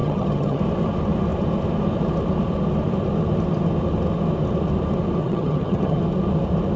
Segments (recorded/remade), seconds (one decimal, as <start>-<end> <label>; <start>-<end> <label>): 0.0-0.6 remade; 0.6-5.2 recorded; 5.2-6.0 remade; 6.0-6.8 recorded